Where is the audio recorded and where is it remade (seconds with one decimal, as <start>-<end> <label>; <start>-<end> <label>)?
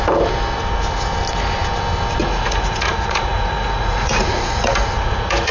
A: 0.0-2.2 recorded; 2.2-5.5 remade